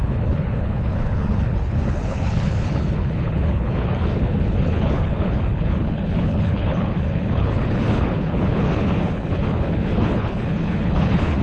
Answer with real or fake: fake